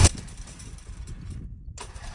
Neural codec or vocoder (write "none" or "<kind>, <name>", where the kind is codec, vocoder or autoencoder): vocoder, BigVGAN v2